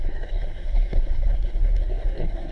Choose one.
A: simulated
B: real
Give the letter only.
A